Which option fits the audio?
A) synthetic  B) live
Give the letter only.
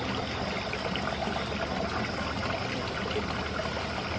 B